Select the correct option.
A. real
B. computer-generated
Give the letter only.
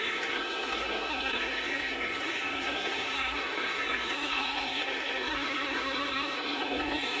B